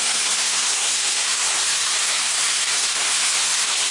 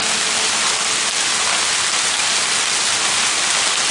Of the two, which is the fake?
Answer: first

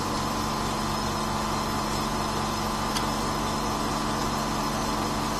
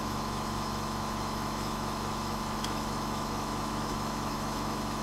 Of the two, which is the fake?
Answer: second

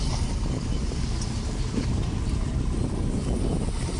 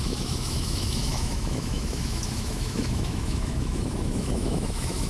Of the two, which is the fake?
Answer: second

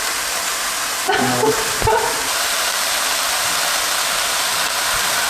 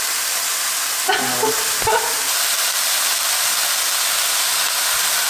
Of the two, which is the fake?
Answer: first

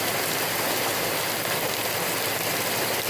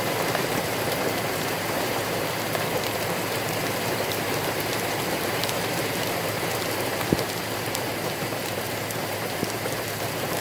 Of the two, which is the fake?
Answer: second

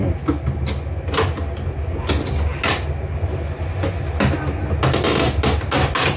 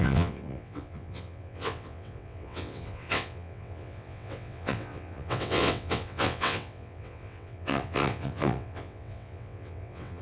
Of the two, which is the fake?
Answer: second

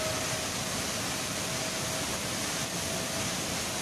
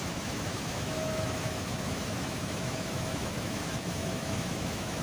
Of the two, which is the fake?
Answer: second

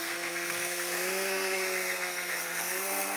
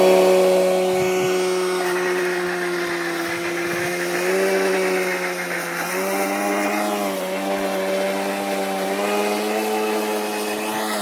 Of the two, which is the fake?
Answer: first